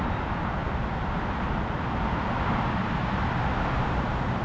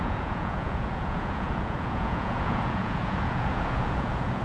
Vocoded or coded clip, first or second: second